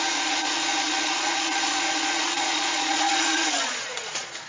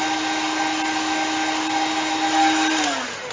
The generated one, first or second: first